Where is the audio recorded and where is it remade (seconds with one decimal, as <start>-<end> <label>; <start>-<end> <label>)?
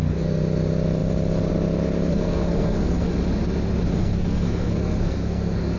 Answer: 0.0-2.1 recorded; 2.1-3.1 remade; 3.1-4.0 recorded; 4.0-5.8 remade